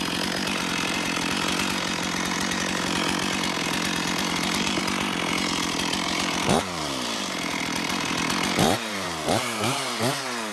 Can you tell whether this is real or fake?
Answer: fake